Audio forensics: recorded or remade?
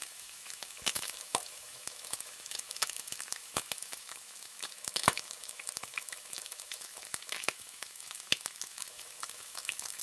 remade